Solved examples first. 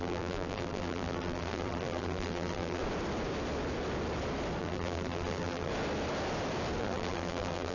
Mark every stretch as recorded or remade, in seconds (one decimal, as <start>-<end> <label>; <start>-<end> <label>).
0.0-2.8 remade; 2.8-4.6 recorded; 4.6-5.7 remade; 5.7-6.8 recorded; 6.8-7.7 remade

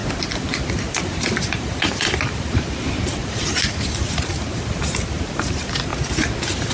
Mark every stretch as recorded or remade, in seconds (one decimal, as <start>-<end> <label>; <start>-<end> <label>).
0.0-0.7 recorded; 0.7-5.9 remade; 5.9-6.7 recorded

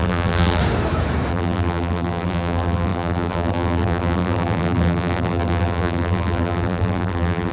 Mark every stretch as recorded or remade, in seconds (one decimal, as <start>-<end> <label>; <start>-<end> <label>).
0.0-0.6 remade; 0.6-1.3 recorded; 1.3-7.5 remade

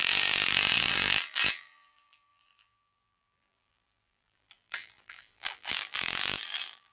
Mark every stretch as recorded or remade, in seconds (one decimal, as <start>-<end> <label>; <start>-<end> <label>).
0.0-6.9 remade

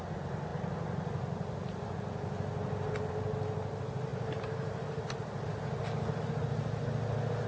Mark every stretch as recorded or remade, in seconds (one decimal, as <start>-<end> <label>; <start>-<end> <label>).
0.0-4.1 recorded; 4.1-6.3 remade; 6.3-7.5 recorded

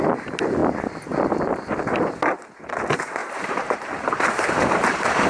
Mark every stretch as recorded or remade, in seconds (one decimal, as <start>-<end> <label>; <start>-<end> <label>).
0.0-3.2 recorded; 3.2-5.3 remade

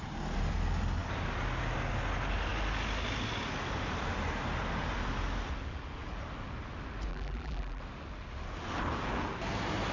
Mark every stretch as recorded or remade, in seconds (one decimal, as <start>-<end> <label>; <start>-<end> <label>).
0.0-7.1 recorded; 7.1-7.8 remade; 7.8-9.9 recorded

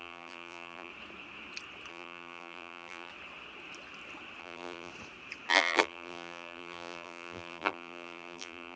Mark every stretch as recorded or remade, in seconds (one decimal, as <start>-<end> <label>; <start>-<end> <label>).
0.0-0.9 remade; 0.9-1.9 recorded; 1.9-3.1 remade; 3.1-4.4 recorded; 4.4-4.9 remade; 4.9-5.5 recorded; 5.5-8.8 remade